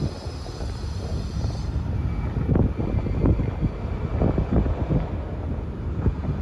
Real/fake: real